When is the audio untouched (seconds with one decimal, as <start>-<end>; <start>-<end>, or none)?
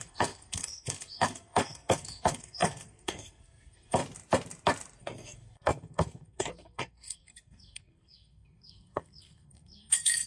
4.0-5.0